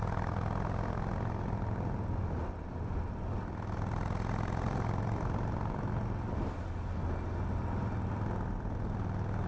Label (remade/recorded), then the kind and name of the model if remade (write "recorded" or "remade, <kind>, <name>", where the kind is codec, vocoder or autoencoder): recorded